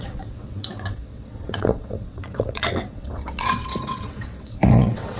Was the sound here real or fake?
fake